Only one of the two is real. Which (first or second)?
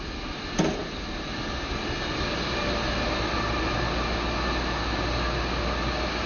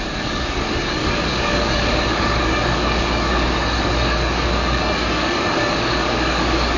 first